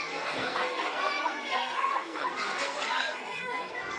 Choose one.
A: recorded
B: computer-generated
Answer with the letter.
B